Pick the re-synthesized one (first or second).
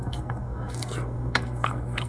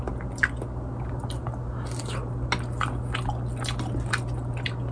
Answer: first